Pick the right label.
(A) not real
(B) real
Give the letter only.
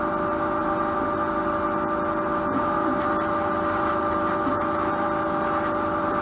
B